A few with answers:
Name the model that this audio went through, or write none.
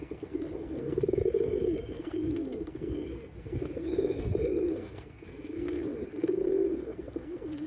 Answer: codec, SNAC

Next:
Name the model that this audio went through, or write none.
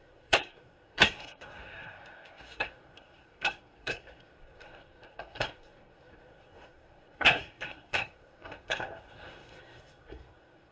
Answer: codec, SNAC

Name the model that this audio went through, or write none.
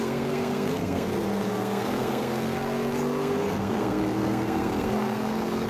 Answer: codec, SNAC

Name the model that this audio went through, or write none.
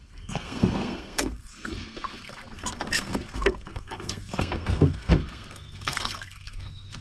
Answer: codec, SNAC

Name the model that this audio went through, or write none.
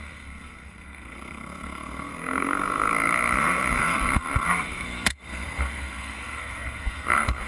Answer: codec, SNAC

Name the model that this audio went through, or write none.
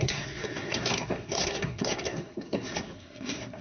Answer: codec, SNAC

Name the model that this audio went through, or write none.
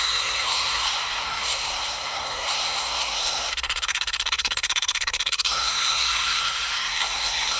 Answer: codec, SNAC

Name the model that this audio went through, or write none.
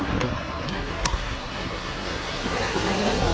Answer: codec, SNAC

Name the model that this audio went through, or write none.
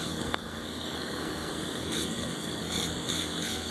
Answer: codec, SNAC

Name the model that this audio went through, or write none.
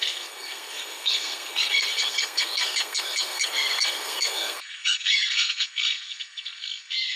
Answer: codec, SNAC